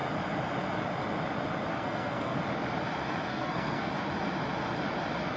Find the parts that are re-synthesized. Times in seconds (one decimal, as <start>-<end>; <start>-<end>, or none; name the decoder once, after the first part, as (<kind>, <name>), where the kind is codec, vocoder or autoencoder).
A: 1.7-2.4 (codec, SNAC); 3.3-3.9